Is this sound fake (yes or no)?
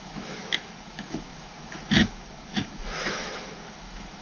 yes